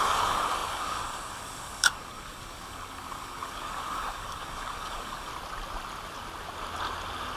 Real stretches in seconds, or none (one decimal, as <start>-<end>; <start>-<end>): 5.3-7.4